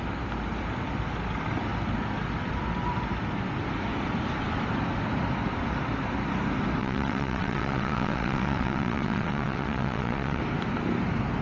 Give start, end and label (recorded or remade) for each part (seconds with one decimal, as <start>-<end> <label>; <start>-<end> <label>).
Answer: 0.0-6.8 recorded; 6.8-10.4 remade; 10.4-11.4 recorded